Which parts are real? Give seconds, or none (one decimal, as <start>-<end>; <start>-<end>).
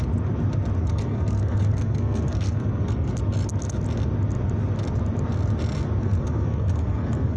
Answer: 0.0-0.8; 3.1-6.0